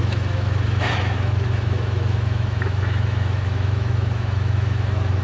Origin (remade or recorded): remade